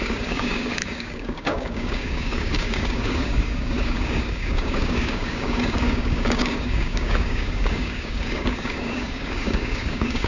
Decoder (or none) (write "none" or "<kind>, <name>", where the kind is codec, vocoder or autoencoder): codec, DAC